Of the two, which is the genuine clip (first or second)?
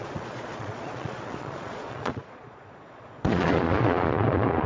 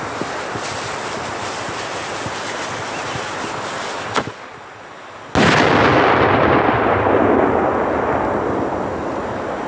second